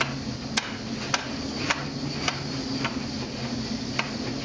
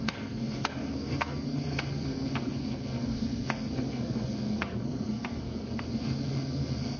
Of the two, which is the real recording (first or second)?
first